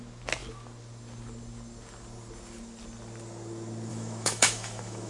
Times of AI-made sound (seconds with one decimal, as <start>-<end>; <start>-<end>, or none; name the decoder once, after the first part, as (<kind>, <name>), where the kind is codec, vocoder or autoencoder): 3.9-5.1 (autoencoder, DAC-VAE)